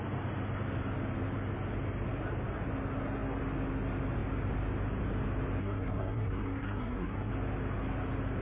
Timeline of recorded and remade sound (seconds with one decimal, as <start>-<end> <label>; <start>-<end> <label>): 0.0-5.6 recorded; 5.6-7.3 remade; 7.3-8.4 recorded